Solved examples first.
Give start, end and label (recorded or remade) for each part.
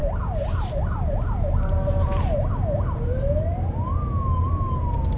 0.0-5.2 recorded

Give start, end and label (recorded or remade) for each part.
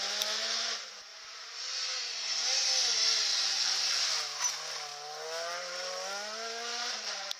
0.0-3.3 recorded; 3.3-4.0 remade; 4.0-6.7 recorded; 6.7-7.4 remade